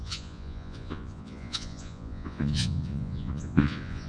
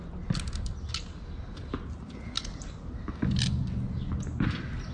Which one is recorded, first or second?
second